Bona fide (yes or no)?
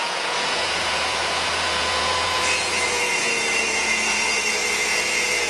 no